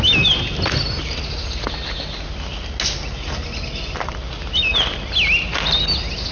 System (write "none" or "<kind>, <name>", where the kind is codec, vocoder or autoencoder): none